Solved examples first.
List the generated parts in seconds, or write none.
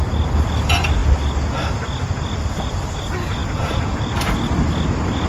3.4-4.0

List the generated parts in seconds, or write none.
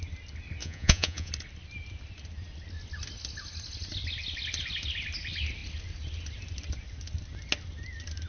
0.6-1.3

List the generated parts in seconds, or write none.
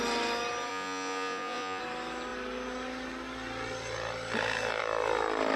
0.7-1.8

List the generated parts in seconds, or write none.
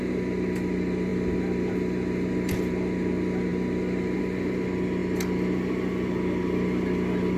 none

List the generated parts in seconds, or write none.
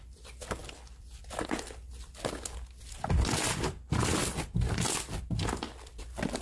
none